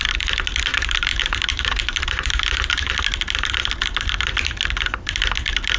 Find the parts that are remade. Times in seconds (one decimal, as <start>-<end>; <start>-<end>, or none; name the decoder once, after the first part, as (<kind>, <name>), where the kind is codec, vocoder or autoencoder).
0.7-2.9 (vocoder, BigVGAN v2)